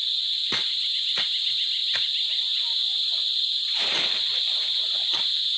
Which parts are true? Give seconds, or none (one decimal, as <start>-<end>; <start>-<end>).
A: 0.0-0.7; 1.8-4.7